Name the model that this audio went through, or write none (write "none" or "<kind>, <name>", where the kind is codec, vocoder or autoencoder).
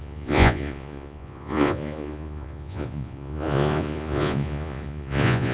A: vocoder, Vocos